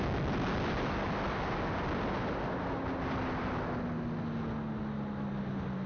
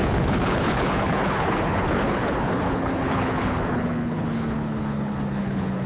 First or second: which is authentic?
first